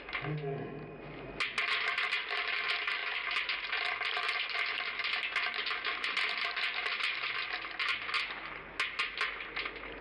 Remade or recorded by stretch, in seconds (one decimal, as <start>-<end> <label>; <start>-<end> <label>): 0.0-10.0 recorded